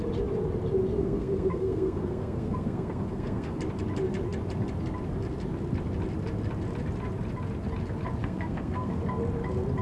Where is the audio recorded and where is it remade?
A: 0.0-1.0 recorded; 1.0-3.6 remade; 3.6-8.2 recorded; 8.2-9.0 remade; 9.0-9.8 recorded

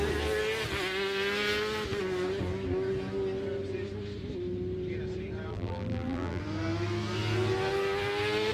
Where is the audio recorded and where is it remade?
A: 0.0-5.5 recorded; 5.5-6.4 remade; 6.4-8.5 recorded

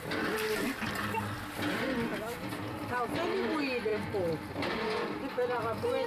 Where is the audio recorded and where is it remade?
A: 0.0-2.1 recorded; 2.1-2.9 remade; 2.9-3.9 recorded; 3.9-4.5 remade; 4.5-6.1 recorded

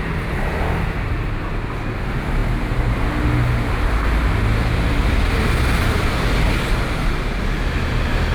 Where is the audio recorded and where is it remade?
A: 0.0-8.3 recorded

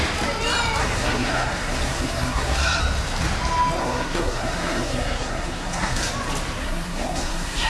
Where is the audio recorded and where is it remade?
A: 0.0-0.8 recorded; 0.8-2.8 remade; 2.8-3.8 recorded; 3.8-6.1 remade; 6.1-6.6 recorded; 6.6-7.7 remade